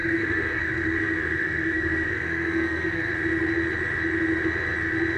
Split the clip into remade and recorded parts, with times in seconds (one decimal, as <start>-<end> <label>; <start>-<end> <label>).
0.0-3.1 remade; 3.1-5.2 recorded